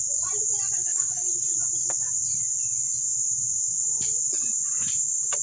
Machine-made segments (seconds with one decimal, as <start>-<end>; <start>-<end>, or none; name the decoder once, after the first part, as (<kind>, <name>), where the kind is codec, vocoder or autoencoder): 0.8-1.3 (codec, DAC)